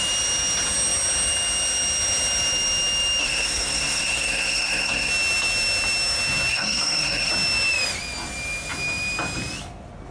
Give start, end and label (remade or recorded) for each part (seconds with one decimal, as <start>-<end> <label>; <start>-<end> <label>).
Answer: 0.0-3.2 recorded; 3.2-5.1 remade; 5.1-6.5 recorded; 6.5-7.3 remade; 7.3-10.1 recorded